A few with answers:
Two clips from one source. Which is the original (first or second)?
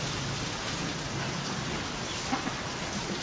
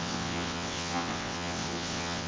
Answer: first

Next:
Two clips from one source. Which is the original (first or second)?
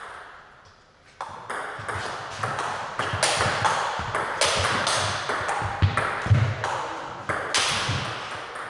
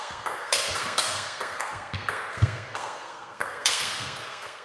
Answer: first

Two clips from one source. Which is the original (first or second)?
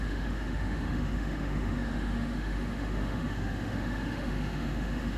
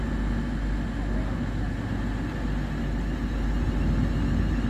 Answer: second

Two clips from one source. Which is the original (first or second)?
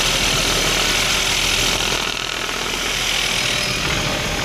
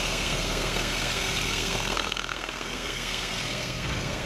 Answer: first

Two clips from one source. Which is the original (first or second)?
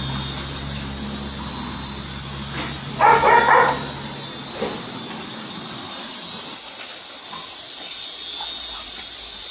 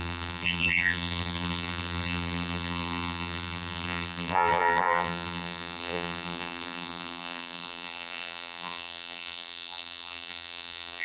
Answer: first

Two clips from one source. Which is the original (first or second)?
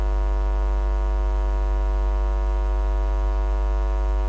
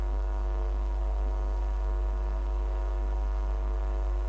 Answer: first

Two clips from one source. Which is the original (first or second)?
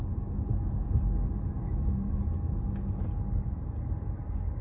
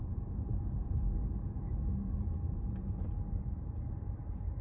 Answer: first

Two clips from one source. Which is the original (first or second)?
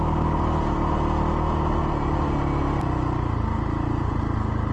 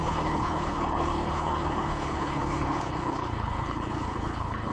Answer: first